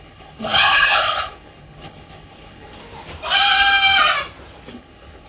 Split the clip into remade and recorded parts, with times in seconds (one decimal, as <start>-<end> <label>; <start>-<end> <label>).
0.0-2.8 remade; 2.8-4.7 recorded; 4.7-5.3 remade